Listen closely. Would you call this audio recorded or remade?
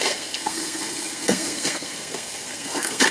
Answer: remade